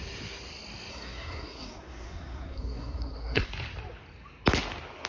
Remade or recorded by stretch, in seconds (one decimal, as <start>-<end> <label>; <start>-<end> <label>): 0.0-0.9 recorded; 0.9-3.5 remade; 3.5-5.1 recorded